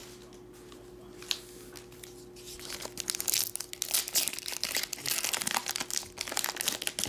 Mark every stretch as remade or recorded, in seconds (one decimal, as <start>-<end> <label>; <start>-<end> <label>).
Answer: 0.0-7.1 recorded